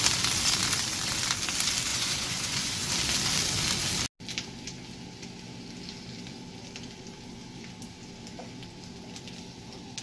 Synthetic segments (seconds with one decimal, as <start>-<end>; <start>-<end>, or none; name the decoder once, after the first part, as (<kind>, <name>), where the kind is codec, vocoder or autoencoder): 1.9-2.9 (vocoder, Vocos)